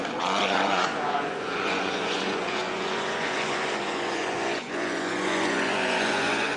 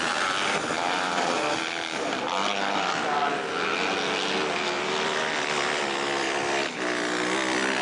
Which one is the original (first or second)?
second